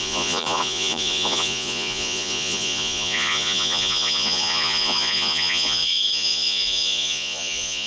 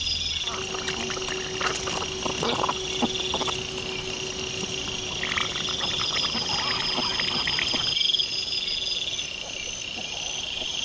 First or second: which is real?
second